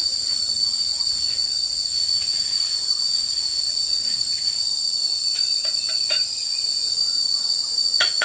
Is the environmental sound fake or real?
fake